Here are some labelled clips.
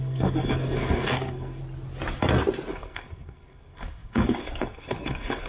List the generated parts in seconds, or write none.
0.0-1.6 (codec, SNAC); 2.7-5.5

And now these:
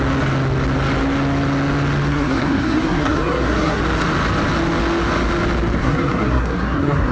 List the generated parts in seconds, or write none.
2.1-3.8 (codec, SNAC); 5.8-7.1